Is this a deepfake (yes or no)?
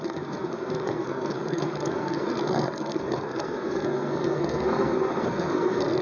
yes